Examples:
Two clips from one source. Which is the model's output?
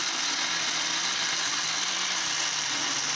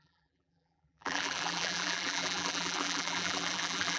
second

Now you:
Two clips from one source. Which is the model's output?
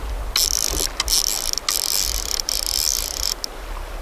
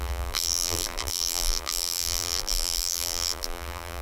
second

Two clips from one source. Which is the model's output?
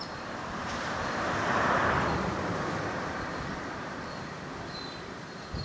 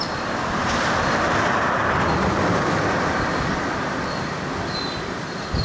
first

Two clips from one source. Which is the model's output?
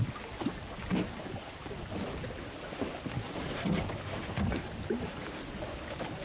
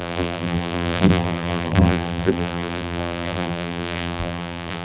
second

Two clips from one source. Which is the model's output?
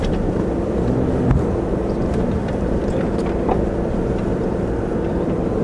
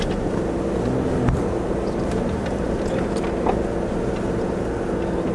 first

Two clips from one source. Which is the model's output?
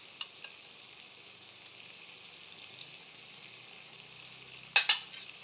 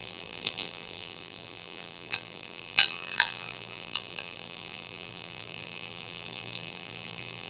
second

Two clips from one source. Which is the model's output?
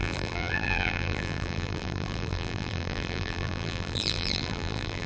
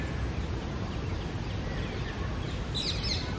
first